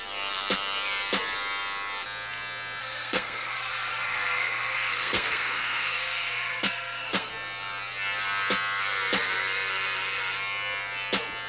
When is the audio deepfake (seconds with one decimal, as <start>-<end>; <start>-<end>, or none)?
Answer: 2.8-7.3